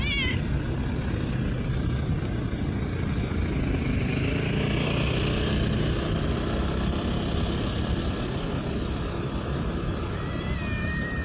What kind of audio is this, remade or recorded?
recorded